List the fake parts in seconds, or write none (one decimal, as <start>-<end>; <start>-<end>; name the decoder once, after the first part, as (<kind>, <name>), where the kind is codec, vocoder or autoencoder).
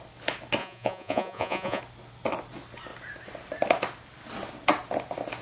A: 0.6-1.8 (vocoder, Vocos)